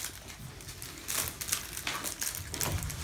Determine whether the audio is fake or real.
real